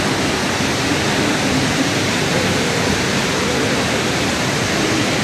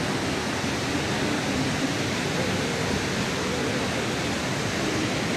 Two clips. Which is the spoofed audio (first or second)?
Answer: first